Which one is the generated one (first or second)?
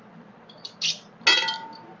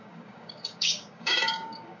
second